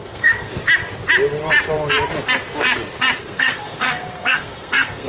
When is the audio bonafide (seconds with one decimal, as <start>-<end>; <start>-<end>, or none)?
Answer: 0.5-3.2